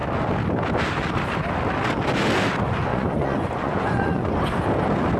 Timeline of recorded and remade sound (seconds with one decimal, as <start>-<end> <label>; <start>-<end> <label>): 0.0-2.9 recorded; 2.9-4.3 remade; 4.3-5.2 recorded